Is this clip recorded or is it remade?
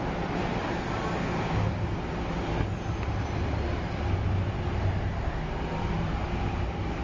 recorded